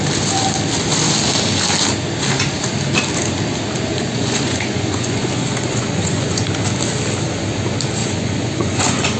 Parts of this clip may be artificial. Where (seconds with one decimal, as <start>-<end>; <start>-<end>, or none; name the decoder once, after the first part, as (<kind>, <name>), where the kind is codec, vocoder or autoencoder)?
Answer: 3.9-6.5 (vocoder, Vocos); 8.0-9.2